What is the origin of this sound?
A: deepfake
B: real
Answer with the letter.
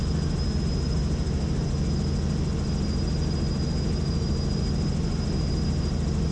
B